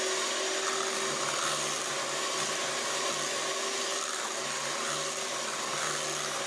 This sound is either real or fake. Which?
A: real